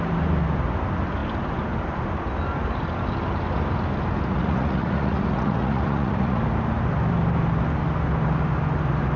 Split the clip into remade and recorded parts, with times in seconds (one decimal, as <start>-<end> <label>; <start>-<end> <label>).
0.0-4.3 recorded; 4.3-6.4 remade; 6.4-9.2 recorded